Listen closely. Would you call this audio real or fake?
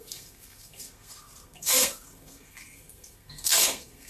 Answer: fake